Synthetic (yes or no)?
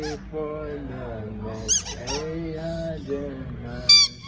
no